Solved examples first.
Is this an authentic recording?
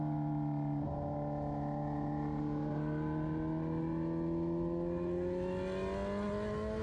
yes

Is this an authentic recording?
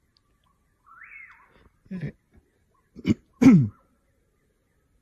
yes